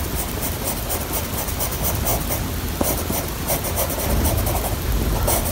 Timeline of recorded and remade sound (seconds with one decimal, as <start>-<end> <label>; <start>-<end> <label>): 0.0-5.5 recorded

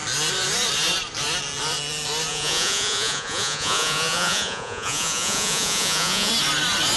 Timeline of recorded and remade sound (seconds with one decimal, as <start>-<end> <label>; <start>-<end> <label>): 0.0-2.3 recorded; 2.3-6.3 remade; 6.3-7.0 recorded

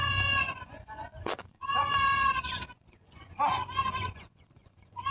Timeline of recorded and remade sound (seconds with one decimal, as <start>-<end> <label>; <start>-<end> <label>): 0.0-5.1 remade